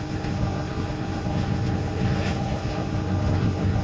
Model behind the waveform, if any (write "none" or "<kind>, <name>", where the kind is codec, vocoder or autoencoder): codec, SNAC